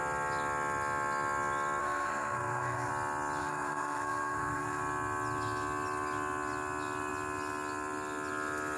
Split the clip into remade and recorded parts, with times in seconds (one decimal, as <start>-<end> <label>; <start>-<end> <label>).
0.0-1.8 recorded; 1.8-2.9 remade; 2.9-3.4 recorded; 3.4-4.8 remade; 4.8-8.8 recorded